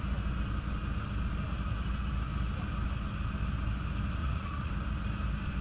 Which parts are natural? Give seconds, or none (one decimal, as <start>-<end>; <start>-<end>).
0.0-4.2; 4.7-5.6